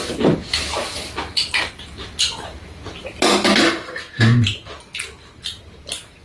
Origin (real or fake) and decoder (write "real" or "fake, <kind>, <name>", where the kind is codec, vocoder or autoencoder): real